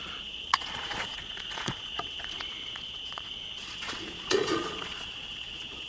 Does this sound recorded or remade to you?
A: remade